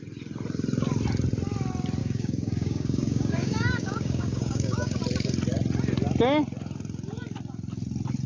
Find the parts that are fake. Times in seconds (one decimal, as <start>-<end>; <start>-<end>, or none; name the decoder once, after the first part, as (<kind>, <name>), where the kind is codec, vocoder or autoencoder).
2.0-5.0 (codec, DAC)